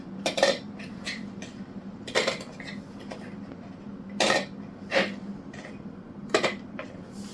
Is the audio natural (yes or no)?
no